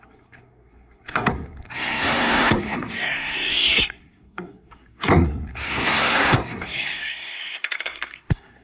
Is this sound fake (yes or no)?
yes